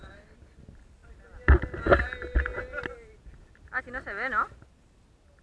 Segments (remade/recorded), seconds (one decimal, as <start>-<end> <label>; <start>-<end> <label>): 0.0-5.4 recorded